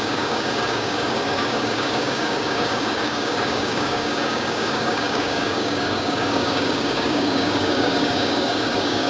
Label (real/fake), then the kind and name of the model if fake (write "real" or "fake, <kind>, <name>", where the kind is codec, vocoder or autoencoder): fake, codec, DAC